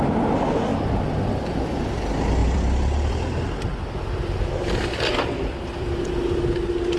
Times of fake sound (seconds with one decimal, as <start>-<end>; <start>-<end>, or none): 0.7-1.6; 2.4-3.1; 3.7-5.0